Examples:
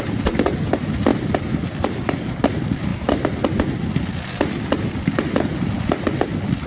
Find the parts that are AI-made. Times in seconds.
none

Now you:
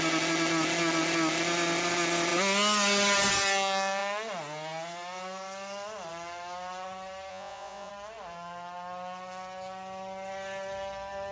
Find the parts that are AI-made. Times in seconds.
7.3-7.9 (vocoder, Vocos)